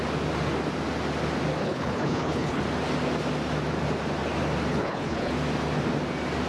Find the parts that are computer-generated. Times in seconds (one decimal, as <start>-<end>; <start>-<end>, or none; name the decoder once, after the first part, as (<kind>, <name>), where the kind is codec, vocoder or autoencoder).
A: 1.6-2.6 (codec, HILCodec); 4.7-5.3